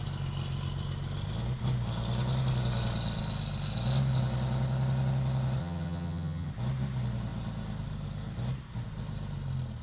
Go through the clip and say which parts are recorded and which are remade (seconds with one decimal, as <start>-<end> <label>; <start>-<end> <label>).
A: 0.0-5.6 recorded; 5.6-6.5 remade; 6.5-9.8 recorded

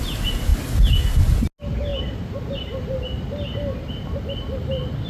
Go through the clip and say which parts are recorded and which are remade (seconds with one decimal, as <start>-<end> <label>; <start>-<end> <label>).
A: 0.0-5.1 recorded

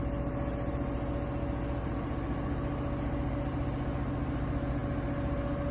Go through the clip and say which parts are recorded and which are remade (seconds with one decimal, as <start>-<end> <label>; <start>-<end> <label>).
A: 0.0-5.7 recorded

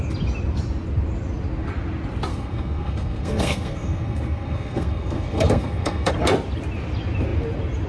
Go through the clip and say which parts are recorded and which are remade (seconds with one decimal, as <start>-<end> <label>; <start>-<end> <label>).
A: 0.0-2.3 recorded; 2.3-6.1 remade; 6.1-7.9 recorded